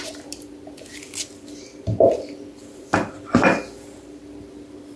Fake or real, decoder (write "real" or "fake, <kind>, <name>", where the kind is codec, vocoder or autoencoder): fake, vocoder, BigVGAN v2